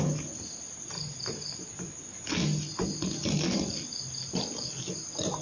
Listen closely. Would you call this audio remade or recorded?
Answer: recorded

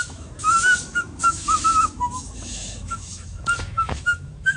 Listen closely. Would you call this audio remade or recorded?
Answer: remade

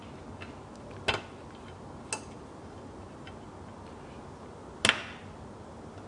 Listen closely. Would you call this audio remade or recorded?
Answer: recorded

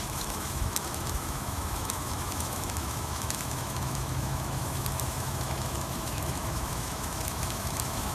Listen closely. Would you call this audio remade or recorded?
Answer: remade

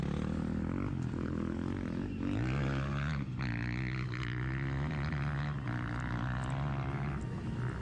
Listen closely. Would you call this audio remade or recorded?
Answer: recorded